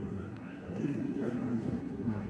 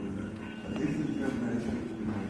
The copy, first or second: first